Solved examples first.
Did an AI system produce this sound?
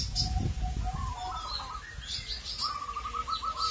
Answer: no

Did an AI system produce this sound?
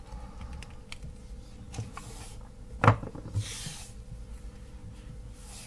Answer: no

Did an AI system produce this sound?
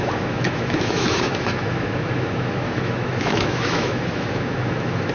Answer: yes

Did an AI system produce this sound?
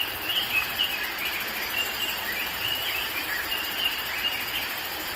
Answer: yes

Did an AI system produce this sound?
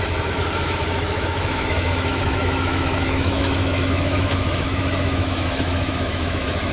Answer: yes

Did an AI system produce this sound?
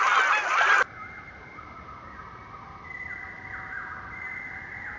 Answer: no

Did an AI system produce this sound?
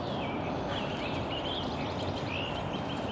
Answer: no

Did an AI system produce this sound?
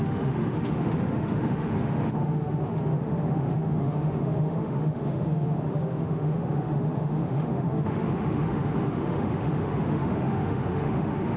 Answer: yes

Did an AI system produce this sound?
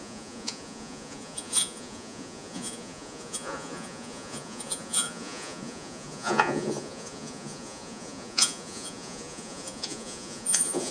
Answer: yes